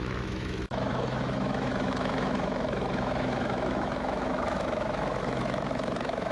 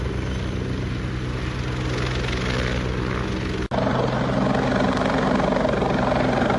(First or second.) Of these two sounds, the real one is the second